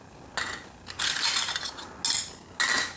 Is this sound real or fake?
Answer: real